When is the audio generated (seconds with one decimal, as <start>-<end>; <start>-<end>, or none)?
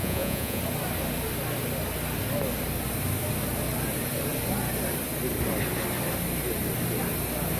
0.0-0.6